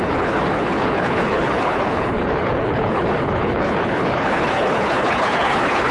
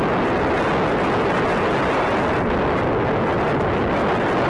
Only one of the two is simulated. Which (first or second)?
first